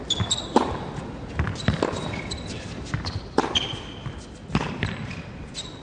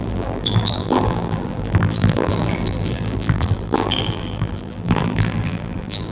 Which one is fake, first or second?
second